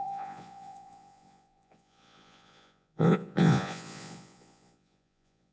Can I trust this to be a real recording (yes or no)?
no